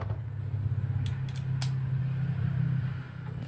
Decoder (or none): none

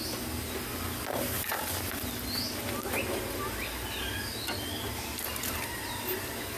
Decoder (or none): none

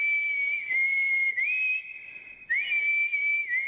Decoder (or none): none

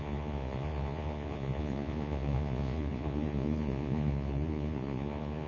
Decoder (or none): vocoder, Vocos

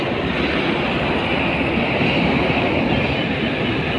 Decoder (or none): none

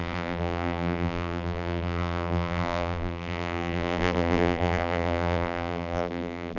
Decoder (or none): vocoder, BigVGAN v2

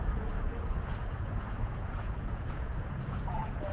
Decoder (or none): vocoder, Vocos